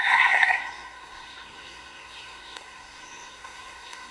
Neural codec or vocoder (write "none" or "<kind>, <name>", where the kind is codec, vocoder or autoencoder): codec, SNAC